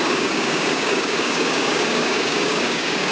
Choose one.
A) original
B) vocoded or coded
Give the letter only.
B